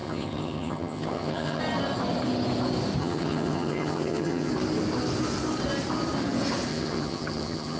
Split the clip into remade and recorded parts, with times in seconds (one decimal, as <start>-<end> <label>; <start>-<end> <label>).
0.0-1.6 remade; 1.6-3.0 recorded; 3.0-4.5 remade; 4.5-6.7 recorded; 6.7-7.8 remade